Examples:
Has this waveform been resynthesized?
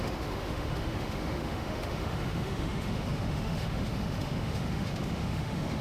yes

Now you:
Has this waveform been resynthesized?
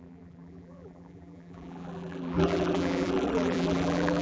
yes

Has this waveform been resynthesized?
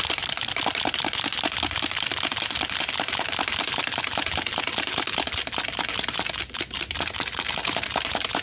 yes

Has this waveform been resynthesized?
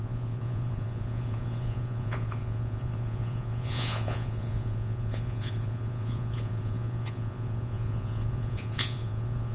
yes